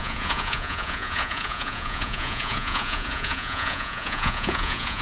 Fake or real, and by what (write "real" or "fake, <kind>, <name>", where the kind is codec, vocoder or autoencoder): fake, vocoder, Vocos